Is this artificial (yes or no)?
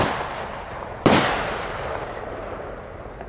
no